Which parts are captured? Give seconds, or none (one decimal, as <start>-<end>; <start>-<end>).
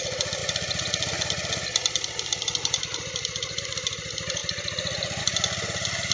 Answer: 0.0-6.1